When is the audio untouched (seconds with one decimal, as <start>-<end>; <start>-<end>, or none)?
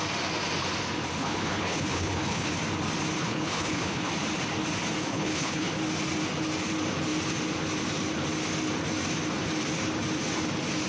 0.0-1.2; 2.5-3.2; 4.1-5.1; 5.7-10.9